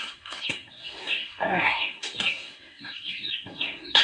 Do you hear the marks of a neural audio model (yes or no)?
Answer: yes